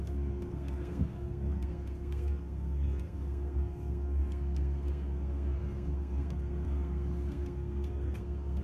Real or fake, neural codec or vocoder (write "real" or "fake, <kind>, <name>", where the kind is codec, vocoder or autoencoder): fake, codec, SNAC